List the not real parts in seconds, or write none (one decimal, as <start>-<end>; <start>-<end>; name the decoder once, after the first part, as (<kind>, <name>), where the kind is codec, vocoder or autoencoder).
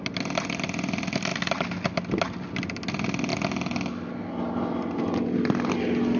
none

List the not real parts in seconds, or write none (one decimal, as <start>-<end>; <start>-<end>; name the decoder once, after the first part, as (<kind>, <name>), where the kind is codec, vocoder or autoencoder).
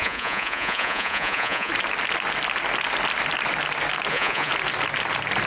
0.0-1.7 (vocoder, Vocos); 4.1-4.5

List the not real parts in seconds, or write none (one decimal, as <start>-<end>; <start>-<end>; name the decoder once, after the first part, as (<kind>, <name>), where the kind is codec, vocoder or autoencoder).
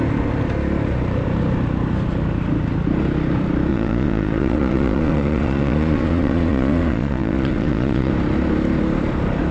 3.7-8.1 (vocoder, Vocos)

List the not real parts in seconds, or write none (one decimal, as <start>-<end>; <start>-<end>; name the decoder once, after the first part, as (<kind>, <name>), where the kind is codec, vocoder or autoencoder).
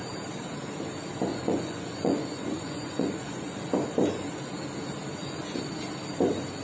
1.3-3.4 (vocoder, Vocos); 5.2-5.7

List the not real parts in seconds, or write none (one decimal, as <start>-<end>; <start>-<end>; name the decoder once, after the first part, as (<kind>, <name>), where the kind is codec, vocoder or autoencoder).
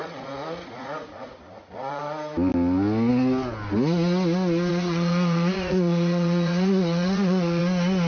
0.0-2.0 (vocoder, Vocos); 4.7-7.6